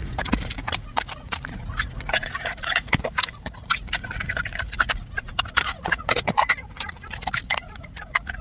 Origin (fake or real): fake